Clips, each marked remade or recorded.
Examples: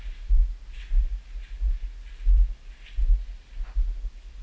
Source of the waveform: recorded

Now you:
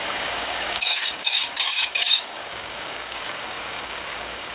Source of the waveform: remade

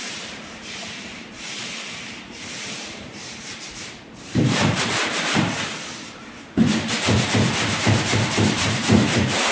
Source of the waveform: remade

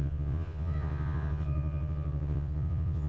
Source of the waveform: remade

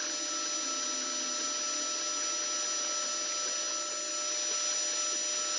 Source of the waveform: recorded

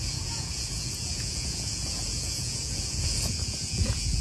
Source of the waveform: remade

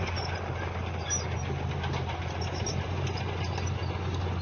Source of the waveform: recorded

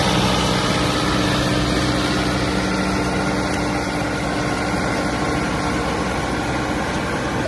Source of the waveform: recorded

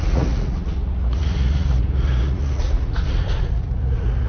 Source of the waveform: remade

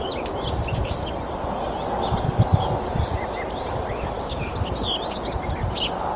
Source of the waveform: recorded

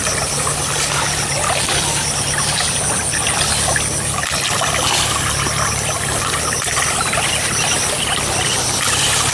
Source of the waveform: recorded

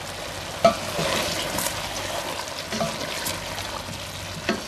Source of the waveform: recorded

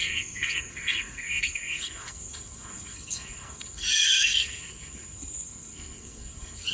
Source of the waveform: remade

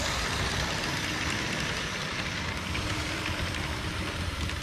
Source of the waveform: remade